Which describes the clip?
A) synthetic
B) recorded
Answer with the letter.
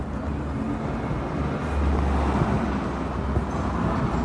B